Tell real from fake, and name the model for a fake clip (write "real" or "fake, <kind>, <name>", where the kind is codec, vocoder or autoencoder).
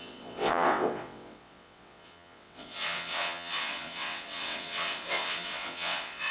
fake, vocoder, WaveNeXt